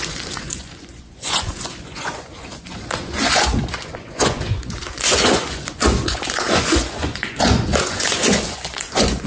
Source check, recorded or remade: remade